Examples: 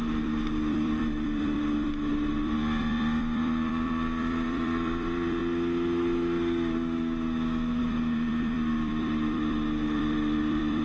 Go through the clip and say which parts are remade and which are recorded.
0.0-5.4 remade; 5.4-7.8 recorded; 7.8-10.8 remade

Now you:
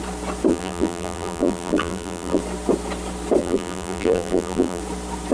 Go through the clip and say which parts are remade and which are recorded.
0.0-0.5 recorded; 0.5-2.4 remade; 2.4-3.4 recorded; 3.4-4.8 remade; 4.8-5.3 recorded

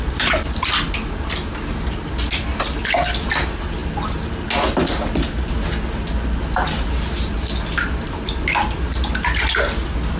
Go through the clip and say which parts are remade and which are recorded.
0.0-10.2 recorded